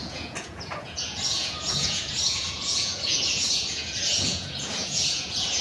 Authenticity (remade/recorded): remade